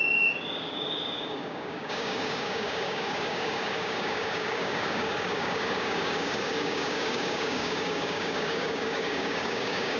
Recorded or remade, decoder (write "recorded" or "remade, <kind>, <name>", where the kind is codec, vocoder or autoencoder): remade, codec, DAC